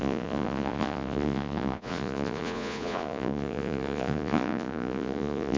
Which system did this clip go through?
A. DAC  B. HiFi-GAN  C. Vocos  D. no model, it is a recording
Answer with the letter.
C